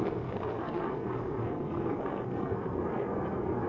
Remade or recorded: remade